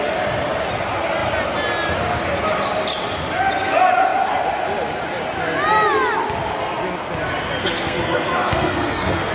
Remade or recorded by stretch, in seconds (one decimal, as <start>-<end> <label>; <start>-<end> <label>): 0.0-7.6 recorded; 7.6-9.3 remade